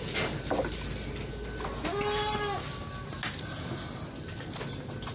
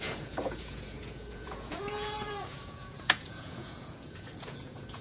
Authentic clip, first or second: first